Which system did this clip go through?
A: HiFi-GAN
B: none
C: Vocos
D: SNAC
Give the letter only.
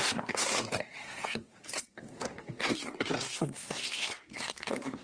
D